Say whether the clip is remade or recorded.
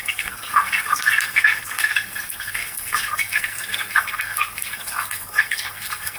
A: remade